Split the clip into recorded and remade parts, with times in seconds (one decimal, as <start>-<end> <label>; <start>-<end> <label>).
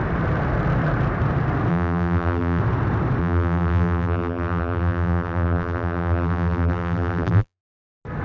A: 0.0-1.7 recorded; 1.7-2.6 remade; 2.6-3.2 recorded; 3.2-7.6 remade; 7.6-8.2 recorded